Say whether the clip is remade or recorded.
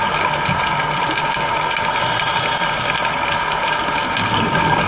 recorded